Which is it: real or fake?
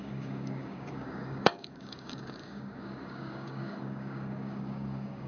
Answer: fake